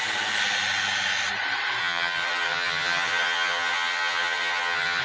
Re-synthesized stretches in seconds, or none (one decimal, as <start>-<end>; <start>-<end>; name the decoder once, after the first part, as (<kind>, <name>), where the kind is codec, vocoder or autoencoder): 1.8-5.0 (vocoder, HiFi-GAN)

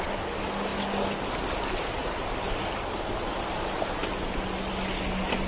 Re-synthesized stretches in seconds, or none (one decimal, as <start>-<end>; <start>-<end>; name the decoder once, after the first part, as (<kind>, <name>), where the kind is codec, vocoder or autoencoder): none

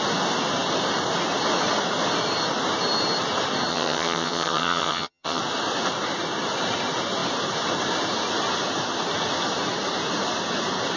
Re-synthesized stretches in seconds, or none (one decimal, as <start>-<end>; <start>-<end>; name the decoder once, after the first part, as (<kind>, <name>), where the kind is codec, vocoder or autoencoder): 3.7-5.4 (vocoder, HiFi-GAN)

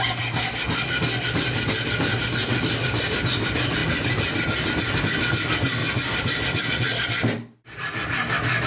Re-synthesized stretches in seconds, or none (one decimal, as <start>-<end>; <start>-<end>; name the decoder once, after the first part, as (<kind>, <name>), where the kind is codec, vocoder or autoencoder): none

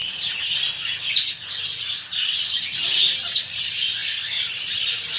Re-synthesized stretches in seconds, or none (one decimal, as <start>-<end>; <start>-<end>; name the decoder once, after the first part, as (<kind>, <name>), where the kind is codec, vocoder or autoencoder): 0.0-0.5 (vocoder, HiFi-GAN)

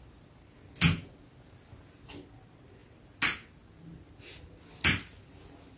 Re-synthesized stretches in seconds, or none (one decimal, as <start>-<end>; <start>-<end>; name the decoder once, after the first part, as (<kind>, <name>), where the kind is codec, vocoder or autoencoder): none

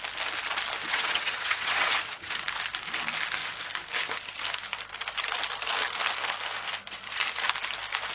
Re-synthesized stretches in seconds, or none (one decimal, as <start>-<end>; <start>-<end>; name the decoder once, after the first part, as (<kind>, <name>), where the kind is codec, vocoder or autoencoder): 0.9-2.3 (vocoder, HiFi-GAN)

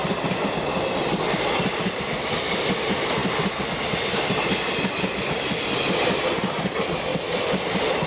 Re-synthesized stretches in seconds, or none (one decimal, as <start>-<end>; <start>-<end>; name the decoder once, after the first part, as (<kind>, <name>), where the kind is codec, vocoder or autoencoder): none